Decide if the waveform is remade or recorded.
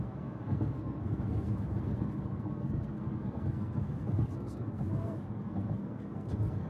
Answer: remade